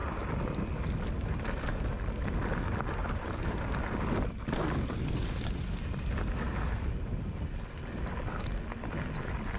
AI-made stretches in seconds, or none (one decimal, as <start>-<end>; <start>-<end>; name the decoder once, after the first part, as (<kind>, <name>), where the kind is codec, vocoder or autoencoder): none